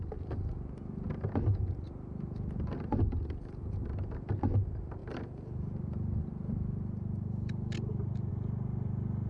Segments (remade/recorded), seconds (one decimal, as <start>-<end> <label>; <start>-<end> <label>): 0.0-9.3 recorded